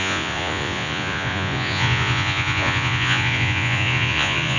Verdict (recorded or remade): remade